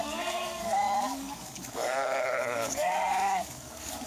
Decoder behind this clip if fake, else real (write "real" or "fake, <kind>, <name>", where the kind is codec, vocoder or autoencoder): fake, codec, DAC